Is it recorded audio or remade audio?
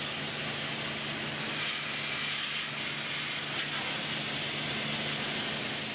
recorded